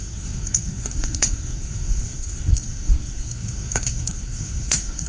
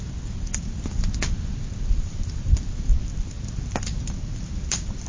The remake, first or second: first